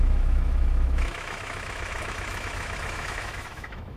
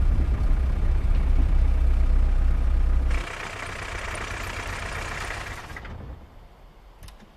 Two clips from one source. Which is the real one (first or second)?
second